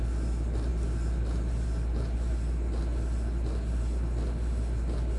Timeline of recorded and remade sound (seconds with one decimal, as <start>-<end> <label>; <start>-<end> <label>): 0.0-5.2 recorded